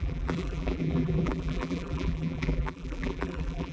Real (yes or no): no